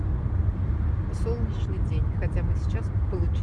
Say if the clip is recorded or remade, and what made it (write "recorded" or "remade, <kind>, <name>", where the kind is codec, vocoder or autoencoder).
recorded